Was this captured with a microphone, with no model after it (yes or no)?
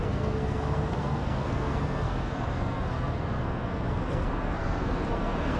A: no